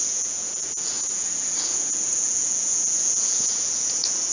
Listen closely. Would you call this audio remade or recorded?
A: remade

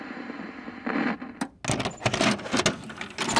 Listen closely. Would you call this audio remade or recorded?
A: recorded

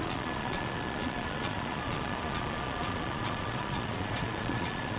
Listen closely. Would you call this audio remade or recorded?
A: remade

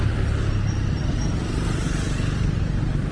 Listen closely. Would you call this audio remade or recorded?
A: recorded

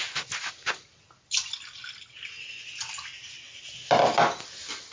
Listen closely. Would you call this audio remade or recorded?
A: recorded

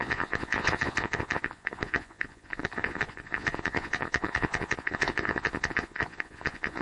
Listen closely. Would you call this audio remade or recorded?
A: remade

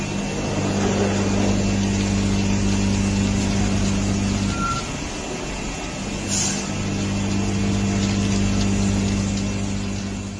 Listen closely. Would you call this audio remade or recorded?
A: recorded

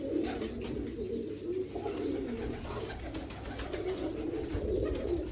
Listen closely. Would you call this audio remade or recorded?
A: recorded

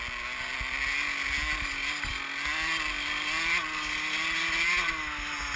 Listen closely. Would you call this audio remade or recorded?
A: recorded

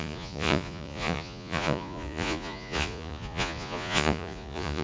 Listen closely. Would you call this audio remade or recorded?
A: remade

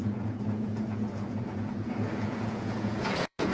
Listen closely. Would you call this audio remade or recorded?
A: remade